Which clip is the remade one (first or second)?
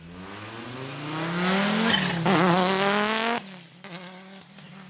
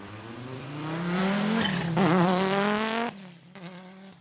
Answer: second